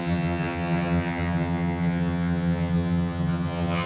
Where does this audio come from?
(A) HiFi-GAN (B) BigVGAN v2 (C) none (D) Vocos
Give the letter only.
A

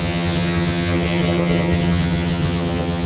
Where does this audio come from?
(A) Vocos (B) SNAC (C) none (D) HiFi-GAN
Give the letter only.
D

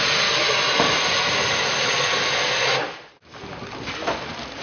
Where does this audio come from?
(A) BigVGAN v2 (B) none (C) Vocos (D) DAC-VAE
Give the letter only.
B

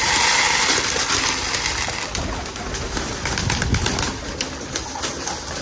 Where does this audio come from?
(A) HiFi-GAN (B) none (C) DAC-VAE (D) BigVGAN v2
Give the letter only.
B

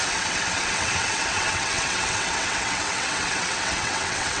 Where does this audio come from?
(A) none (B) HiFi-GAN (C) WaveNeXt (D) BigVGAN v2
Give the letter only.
C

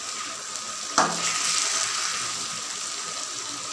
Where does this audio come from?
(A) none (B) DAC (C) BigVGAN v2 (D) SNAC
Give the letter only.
A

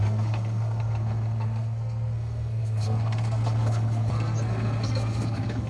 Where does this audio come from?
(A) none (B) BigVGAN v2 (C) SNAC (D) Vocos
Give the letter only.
C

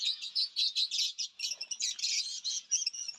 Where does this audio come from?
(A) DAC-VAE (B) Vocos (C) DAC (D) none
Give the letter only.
B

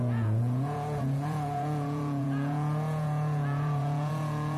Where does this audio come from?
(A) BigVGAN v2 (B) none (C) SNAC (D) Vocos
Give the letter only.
D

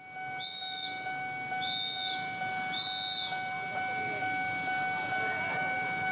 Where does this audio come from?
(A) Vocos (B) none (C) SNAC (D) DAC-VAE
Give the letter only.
B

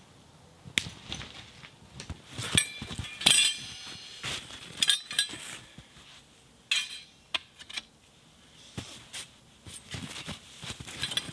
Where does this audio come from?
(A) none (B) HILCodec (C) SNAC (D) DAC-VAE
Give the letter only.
A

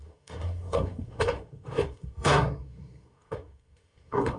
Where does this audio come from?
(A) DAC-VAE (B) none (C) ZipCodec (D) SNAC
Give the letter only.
D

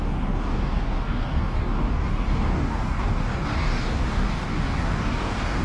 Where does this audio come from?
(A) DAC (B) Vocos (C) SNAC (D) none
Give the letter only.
A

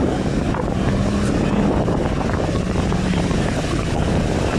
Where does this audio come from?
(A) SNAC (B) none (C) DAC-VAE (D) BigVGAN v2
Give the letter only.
B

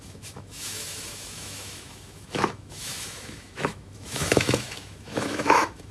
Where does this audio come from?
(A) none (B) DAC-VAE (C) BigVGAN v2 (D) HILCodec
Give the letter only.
B